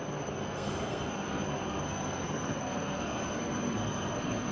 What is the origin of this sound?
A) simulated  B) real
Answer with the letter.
A